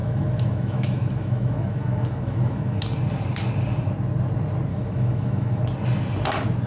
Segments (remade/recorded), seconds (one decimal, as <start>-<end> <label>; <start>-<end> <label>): 0.0-2.8 remade; 2.8-4.7 recorded; 4.7-5.6 remade; 5.6-6.7 recorded